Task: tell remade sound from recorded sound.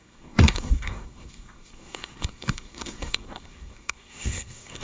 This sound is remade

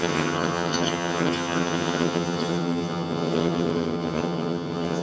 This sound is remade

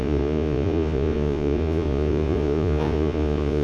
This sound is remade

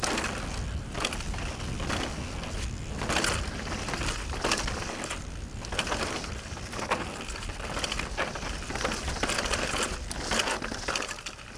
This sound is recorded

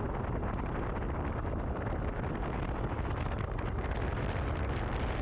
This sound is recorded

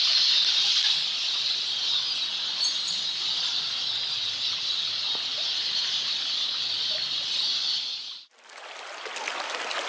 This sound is recorded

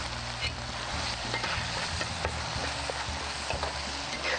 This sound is recorded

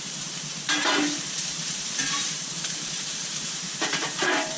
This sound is remade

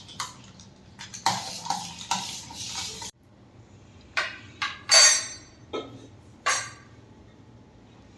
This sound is remade